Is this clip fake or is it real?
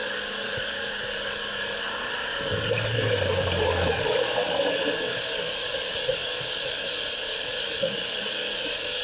fake